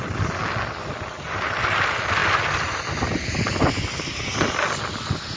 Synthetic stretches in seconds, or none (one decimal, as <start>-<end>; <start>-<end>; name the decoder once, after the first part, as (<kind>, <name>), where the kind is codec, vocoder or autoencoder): none